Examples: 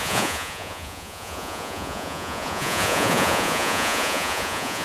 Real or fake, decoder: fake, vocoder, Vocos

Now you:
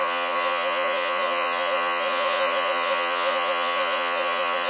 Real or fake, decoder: fake, vocoder, Vocos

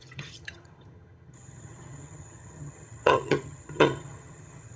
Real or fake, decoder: fake, vocoder, HiFi-GAN